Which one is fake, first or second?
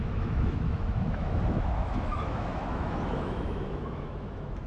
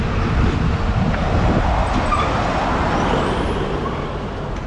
first